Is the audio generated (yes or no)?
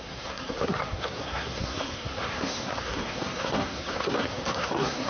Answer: yes